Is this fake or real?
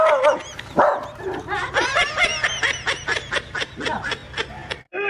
real